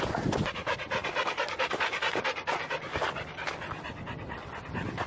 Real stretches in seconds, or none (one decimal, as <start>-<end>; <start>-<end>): 0.0-5.1